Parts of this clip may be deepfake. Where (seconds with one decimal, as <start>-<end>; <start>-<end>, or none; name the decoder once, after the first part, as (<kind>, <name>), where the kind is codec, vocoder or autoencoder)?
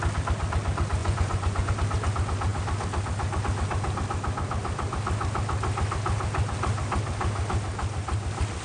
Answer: 1.0-1.7 (vocoder, Vocos)